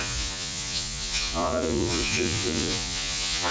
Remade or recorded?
remade